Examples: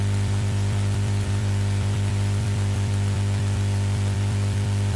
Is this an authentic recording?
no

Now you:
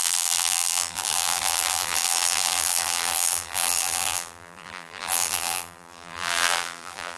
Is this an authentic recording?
no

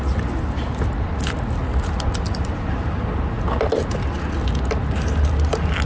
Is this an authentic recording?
yes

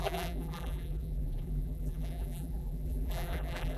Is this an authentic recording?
no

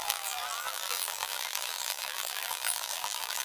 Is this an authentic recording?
no